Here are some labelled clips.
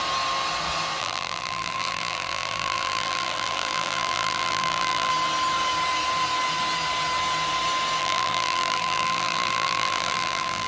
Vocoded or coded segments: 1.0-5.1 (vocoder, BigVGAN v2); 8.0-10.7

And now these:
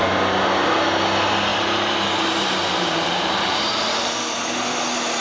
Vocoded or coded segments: 1.5-4.2 (vocoder, BigVGAN v2)

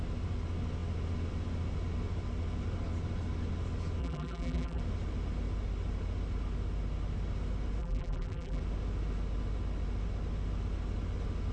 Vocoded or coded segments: 4.0-4.8 (vocoder, BigVGAN v2); 7.8-8.6

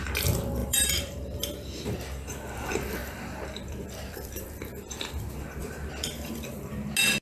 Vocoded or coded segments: 0.6-2.5 (vocoder, BigVGAN v2); 3.0-5.1; 5.6-6.5